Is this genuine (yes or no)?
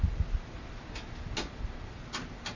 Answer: yes